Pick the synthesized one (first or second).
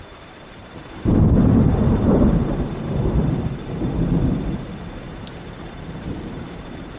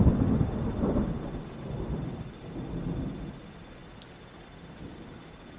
first